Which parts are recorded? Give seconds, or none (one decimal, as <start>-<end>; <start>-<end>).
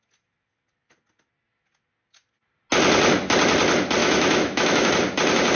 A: 0.0-4.0; 4.9-5.5